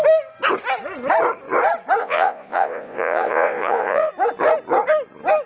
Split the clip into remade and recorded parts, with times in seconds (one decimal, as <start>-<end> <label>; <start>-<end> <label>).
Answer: 0.0-2.0 recorded; 2.0-4.1 remade; 4.1-5.5 recorded